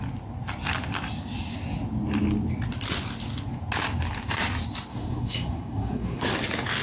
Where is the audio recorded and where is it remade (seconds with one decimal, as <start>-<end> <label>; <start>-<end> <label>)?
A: 0.0-4.9 recorded; 4.9-6.3 remade; 6.3-6.8 recorded